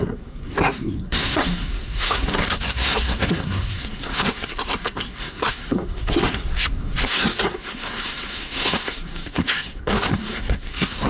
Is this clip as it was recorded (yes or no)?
no